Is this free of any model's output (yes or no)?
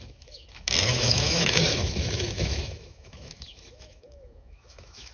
no